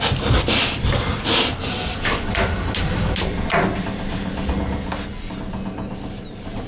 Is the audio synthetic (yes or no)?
no